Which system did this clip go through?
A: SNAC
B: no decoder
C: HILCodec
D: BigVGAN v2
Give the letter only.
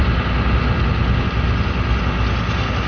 B